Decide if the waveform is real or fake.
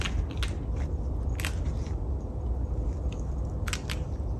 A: real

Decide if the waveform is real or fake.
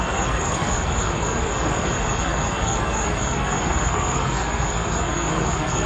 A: fake